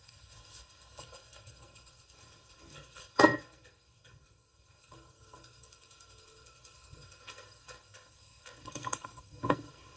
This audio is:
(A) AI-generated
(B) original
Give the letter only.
A